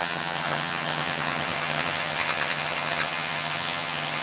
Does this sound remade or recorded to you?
remade